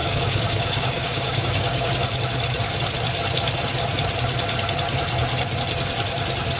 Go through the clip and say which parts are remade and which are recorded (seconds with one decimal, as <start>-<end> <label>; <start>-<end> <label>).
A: 0.0-1.9 remade; 1.9-6.6 recorded